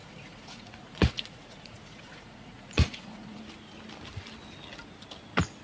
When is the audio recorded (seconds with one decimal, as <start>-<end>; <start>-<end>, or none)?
3.4-5.6

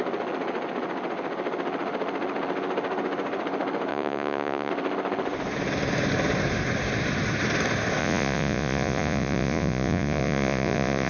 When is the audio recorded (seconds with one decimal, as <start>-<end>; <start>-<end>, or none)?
0.0-3.9; 4.7-8.0

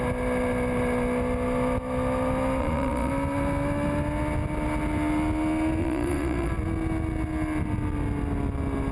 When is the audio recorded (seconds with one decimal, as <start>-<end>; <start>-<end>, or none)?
0.0-2.6; 3.1-5.8; 6.5-8.9

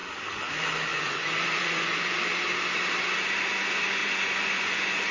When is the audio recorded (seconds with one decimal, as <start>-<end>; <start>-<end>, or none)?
0.0-0.9; 2.2-4.0

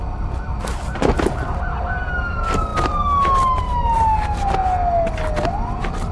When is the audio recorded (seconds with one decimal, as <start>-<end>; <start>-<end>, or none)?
0.0-6.1

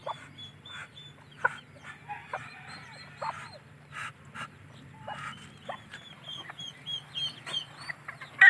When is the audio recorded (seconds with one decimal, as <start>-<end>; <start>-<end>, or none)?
0.0-8.5